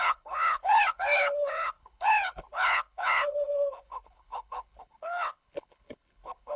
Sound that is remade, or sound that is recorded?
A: remade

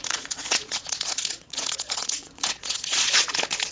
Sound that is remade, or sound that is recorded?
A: remade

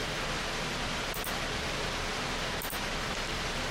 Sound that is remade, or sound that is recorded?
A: recorded